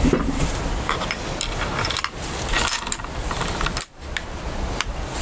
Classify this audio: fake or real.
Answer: real